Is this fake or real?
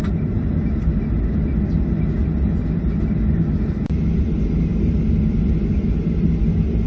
real